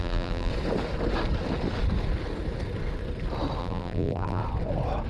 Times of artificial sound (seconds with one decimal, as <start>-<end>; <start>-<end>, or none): 0.0-0.5; 3.6-4.4